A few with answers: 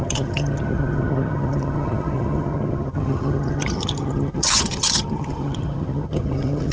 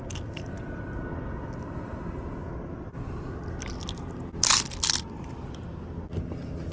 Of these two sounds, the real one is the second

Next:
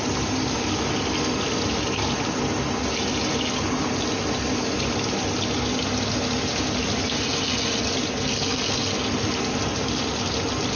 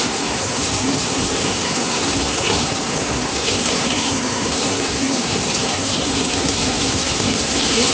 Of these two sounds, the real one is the first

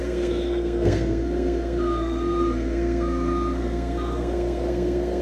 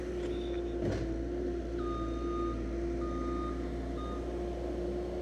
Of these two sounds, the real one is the second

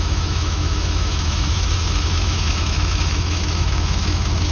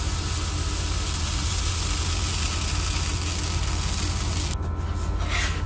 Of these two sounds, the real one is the second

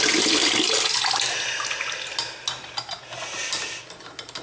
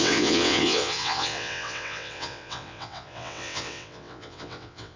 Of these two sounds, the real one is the first